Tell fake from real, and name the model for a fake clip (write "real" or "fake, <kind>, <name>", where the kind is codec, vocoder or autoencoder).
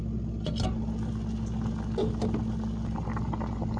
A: real